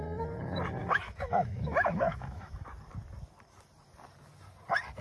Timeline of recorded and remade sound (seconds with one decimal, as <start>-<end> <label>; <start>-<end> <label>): 0.0-0.8 recorded; 0.8-2.7 remade; 2.7-5.0 recorded